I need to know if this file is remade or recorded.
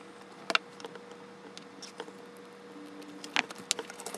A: recorded